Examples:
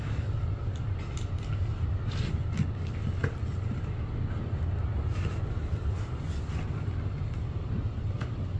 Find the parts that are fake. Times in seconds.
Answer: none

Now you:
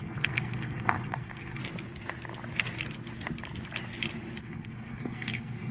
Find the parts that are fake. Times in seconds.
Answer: 0.0-1.6; 4.4-5.7

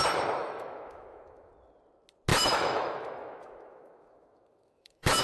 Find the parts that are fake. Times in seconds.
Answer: 0.4-1.5; 2.3-5.2

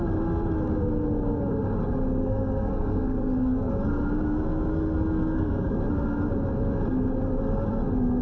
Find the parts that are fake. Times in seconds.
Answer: 2.2-3.7; 4.7-5.7

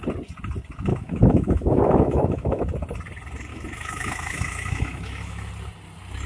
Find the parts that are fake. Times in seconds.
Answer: 0.9-2.6; 3.5-5.5